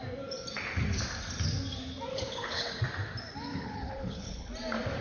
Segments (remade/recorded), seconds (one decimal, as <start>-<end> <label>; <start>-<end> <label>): 0.0-2.1 recorded; 2.1-2.8 remade; 2.8-3.5 recorded; 3.5-4.5 remade; 4.5-5.0 recorded